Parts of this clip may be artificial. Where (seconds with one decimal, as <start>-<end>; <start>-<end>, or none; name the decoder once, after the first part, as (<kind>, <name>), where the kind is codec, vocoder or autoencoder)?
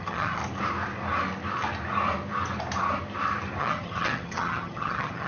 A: 0.0-0.4 (vocoder, HiFi-GAN); 3.6-5.3